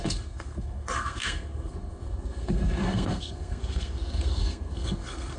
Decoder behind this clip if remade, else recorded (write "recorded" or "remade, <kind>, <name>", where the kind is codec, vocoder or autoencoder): remade, codec, SNAC